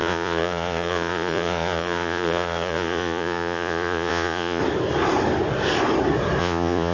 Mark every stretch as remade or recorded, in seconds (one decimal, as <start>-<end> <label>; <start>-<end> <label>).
0.0-4.6 remade; 4.6-6.4 recorded; 6.4-6.9 remade